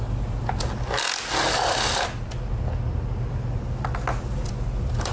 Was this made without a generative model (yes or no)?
yes